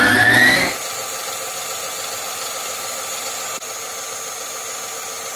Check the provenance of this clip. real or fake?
real